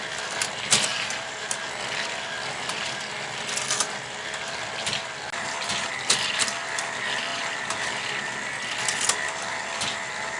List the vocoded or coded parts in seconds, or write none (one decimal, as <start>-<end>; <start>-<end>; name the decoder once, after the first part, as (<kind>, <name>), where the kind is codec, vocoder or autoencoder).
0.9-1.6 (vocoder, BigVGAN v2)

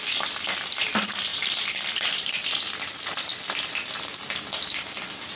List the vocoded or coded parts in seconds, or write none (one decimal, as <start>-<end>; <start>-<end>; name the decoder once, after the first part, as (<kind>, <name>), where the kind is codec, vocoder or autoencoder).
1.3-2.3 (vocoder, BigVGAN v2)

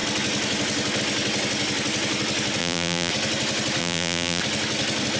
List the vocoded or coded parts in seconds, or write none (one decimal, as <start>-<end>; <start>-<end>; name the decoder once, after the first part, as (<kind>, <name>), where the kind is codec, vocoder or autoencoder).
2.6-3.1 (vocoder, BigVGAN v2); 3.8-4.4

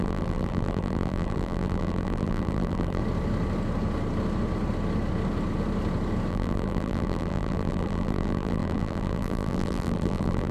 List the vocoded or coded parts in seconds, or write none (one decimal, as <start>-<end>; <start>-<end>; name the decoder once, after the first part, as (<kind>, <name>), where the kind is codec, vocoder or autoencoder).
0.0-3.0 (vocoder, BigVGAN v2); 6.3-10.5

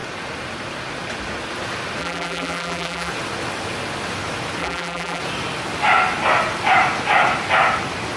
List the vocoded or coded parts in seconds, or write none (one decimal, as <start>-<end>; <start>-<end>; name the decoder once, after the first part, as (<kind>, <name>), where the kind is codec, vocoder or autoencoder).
2.0-3.1 (vocoder, BigVGAN v2); 4.6-5.2